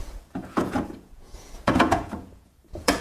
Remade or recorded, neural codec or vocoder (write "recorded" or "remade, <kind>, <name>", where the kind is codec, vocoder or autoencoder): remade, vocoder, Vocos